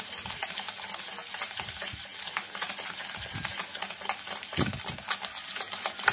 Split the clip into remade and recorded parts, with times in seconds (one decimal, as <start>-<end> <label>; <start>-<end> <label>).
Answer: 0.0-6.1 recorded